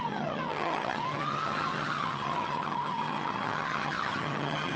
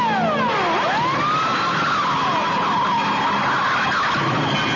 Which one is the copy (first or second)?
first